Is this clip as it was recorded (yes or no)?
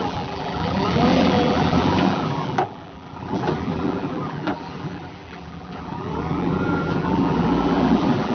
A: no